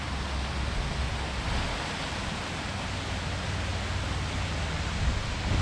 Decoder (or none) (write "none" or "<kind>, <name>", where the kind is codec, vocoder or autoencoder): none